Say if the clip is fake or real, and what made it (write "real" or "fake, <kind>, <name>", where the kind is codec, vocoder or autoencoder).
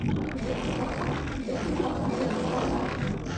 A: real